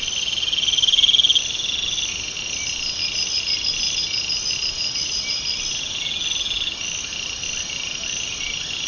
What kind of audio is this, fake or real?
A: real